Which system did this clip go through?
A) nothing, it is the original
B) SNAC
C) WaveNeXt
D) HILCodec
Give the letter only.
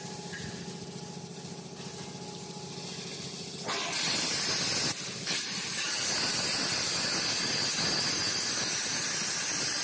A